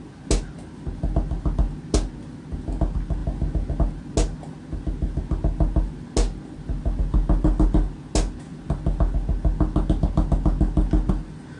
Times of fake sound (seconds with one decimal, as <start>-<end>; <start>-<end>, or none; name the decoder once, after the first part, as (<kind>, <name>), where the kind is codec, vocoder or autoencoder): none